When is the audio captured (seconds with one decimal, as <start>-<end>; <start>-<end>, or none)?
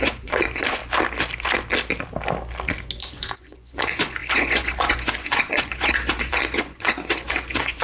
0.8-3.1